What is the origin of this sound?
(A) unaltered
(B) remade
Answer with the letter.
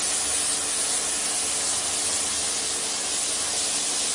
A